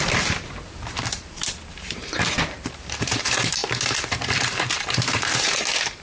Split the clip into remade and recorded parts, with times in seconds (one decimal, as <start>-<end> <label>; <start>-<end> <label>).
0.0-6.0 remade

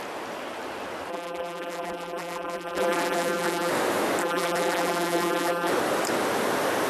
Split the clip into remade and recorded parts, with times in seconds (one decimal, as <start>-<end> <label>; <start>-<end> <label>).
0.0-1.1 recorded; 1.1-3.7 remade; 3.7-4.2 recorded; 4.2-5.7 remade; 5.7-6.9 recorded

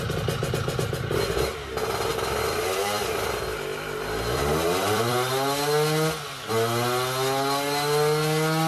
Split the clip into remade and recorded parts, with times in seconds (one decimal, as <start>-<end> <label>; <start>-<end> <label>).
0.0-2.1 recorded; 2.1-5.3 remade; 5.3-8.7 recorded

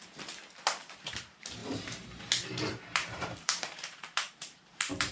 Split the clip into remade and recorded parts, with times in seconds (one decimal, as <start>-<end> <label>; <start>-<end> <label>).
0.0-1.6 recorded; 1.6-2.2 remade; 2.2-2.7 recorded; 2.7-5.1 remade

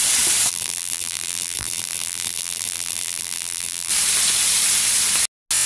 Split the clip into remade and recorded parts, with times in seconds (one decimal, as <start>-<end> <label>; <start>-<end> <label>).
0.0-0.5 recorded; 0.5-3.9 remade; 3.9-5.7 recorded

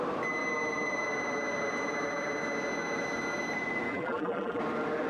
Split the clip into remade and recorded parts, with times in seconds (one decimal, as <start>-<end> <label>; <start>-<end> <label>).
0.0-3.9 recorded; 3.9-4.6 remade; 4.6-5.1 recorded

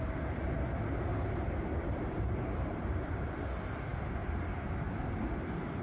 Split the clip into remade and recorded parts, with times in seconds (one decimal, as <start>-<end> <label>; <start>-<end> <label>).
0.0-1.1 recorded; 1.1-3.4 remade; 3.4-5.8 recorded

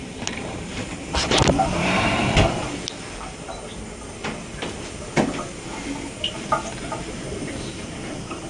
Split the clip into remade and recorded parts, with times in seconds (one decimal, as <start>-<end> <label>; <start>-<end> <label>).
0.0-3.7 remade; 3.7-6.3 recorded; 6.3-8.5 remade